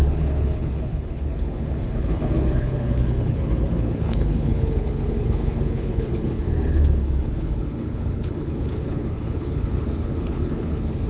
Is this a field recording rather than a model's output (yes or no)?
no